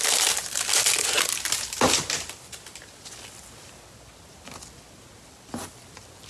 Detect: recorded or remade recorded